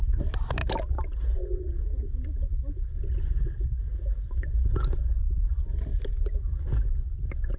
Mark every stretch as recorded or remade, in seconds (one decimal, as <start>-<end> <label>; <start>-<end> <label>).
0.0-5.9 recorded; 5.9-6.6 remade; 6.6-7.6 recorded